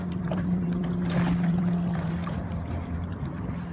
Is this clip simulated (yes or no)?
yes